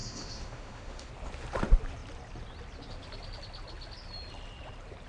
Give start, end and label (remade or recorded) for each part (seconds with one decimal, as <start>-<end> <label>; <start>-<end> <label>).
0.0-1.1 remade; 1.1-5.1 recorded